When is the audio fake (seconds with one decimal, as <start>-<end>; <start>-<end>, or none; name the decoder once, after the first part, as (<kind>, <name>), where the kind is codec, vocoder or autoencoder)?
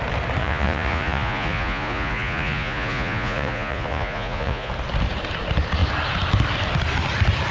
0.4-4.7 (vocoder, Vocos)